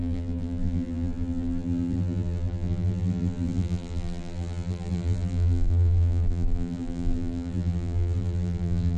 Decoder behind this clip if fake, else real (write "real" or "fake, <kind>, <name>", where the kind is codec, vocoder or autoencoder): fake, vocoder, BigVGAN v2